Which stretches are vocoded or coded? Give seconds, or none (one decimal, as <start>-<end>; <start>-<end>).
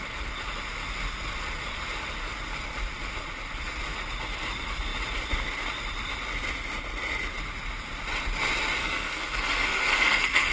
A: 8.8-10.5